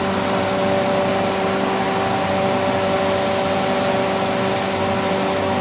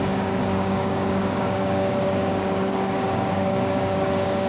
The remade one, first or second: second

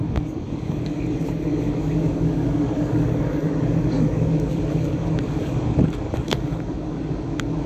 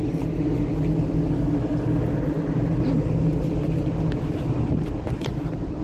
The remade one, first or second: first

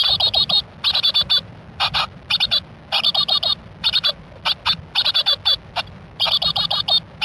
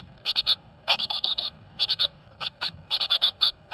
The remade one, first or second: second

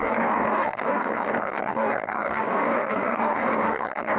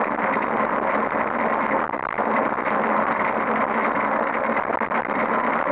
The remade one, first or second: first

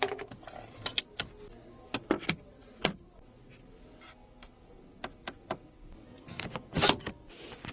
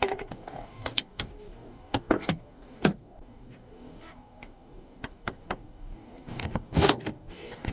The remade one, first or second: second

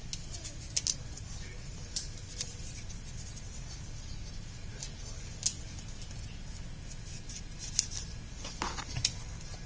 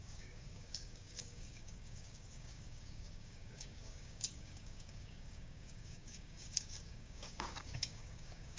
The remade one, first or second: second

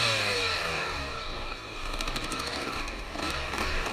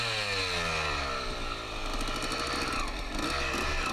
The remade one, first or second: first